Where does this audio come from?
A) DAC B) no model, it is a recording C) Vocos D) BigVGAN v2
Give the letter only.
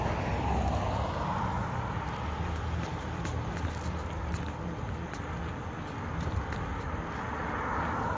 B